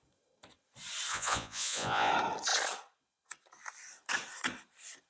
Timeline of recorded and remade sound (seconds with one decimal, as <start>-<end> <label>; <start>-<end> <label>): 0.0-1.1 recorded; 1.1-2.1 remade; 2.1-5.1 recorded

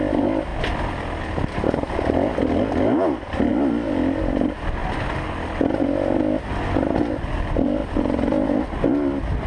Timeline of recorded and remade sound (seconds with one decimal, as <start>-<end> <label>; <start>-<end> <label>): 0.0-7.8 recorded; 7.8-8.5 remade; 8.5-9.5 recorded